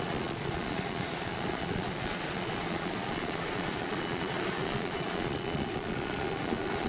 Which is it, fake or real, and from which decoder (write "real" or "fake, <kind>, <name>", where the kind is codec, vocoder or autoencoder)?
fake, vocoder, Vocos